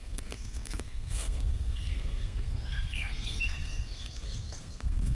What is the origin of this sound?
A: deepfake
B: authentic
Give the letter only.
A